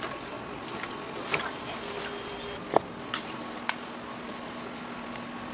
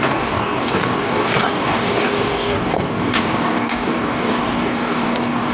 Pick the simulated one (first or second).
second